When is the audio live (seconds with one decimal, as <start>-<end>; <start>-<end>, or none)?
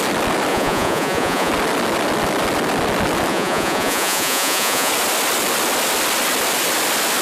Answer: 0.0-0.5; 1.5-3.3; 4.9-7.2